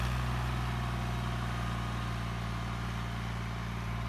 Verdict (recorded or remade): recorded